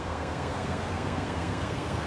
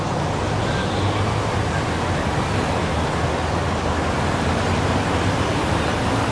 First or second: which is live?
second